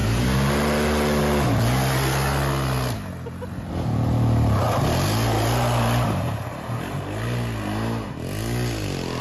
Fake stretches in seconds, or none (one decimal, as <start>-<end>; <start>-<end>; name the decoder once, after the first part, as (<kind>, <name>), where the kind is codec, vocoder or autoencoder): none